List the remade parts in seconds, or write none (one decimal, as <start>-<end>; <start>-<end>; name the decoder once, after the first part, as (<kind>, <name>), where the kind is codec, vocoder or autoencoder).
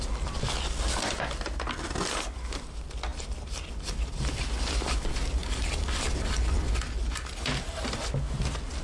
none